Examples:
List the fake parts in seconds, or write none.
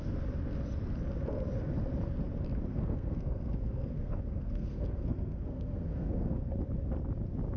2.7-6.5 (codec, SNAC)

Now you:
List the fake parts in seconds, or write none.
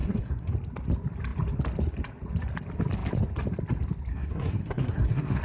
0.0-0.5 (codec, SNAC); 4.1-5.4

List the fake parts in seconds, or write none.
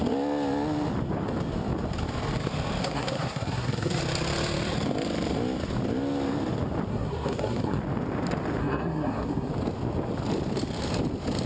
2.8-4.0 (codec, SNAC); 6.9-7.8; 8.6-9.5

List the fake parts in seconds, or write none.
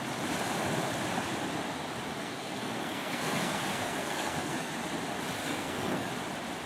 2.2-4.7 (codec, SNAC); 5.4-6.1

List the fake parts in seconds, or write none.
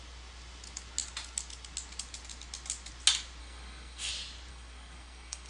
3.4-4.1 (codec, SNAC); 4.5-5.5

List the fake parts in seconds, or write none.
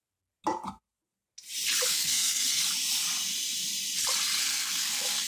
1.9-2.6 (codec, SNAC); 4.4-5.3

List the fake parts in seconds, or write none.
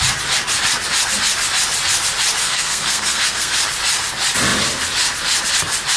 2.4-3.6 (codec, SNAC)